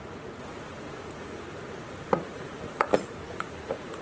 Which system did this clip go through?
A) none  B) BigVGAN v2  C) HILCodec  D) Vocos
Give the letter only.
D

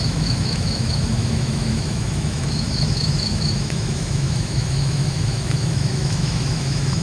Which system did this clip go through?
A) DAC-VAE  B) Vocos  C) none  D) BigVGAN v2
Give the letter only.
A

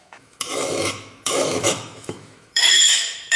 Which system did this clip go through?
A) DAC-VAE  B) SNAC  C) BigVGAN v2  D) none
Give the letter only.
A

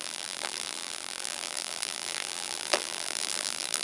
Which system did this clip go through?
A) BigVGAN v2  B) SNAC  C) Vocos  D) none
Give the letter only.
A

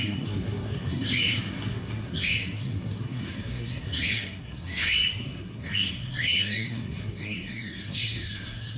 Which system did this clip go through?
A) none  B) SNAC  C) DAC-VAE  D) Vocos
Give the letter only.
B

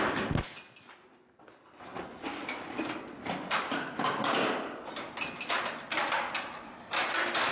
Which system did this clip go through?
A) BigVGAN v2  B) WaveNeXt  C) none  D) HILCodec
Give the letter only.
C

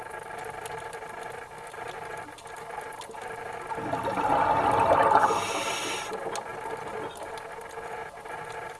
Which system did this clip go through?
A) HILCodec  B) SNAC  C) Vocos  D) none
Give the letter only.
D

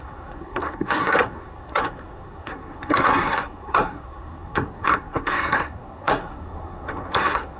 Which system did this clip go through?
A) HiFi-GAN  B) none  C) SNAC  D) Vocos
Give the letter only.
C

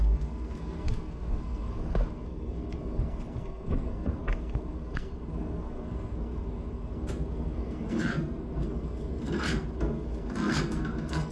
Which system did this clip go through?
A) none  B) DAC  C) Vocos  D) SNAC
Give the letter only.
D